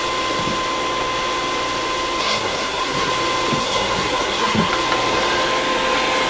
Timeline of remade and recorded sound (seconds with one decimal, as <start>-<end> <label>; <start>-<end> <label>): 0.0-2.2 recorded; 2.2-3.1 remade; 3.1-3.6 recorded; 3.6-4.7 remade; 4.7-6.3 recorded